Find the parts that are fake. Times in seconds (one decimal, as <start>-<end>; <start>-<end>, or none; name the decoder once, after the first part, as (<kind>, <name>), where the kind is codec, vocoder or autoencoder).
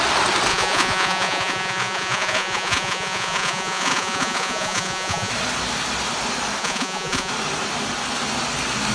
0.5-5.3 (vocoder, Vocos); 6.6-7.3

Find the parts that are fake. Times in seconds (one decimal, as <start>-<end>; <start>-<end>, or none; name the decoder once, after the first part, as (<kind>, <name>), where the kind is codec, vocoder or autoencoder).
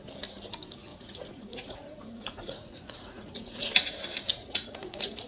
0.9-3.7 (vocoder, Vocos); 4.3-5.3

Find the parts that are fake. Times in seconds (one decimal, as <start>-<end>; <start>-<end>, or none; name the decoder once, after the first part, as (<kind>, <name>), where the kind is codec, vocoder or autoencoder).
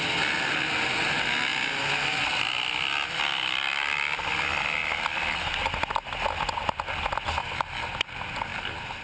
none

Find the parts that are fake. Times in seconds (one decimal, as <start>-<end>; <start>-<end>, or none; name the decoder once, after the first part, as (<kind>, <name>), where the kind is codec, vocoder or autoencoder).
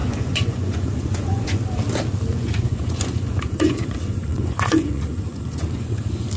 0.0-1.6 (vocoder, Vocos); 2.3-6.0